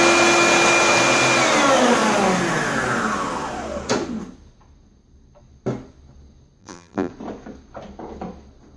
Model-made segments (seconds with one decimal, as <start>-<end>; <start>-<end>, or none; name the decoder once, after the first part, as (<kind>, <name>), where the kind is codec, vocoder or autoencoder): 6.6-7.1 (vocoder, BigVGAN v2)